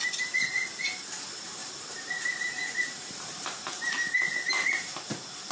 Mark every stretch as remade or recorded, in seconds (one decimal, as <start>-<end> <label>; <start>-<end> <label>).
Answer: 0.0-1.6 recorded; 1.6-4.7 remade; 4.7-5.5 recorded